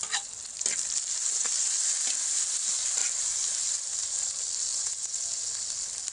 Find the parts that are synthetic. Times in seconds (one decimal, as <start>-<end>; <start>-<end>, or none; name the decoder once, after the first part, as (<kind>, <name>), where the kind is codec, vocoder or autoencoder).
4.7-5.5 (vocoder, Vocos)